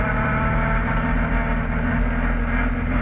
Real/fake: real